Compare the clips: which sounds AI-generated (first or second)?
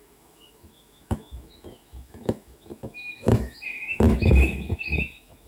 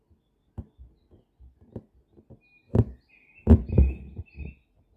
first